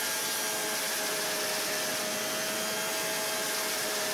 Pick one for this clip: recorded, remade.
recorded